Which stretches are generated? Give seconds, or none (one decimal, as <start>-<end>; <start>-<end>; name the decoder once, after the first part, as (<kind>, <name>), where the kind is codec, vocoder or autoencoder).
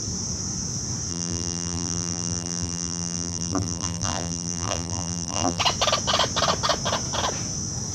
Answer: 1.1-5.6 (vocoder, BigVGAN v2)